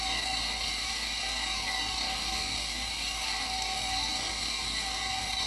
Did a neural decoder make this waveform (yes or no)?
yes